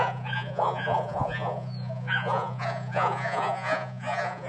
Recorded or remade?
remade